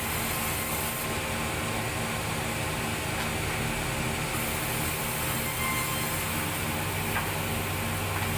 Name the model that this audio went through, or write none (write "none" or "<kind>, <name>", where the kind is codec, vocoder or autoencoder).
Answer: none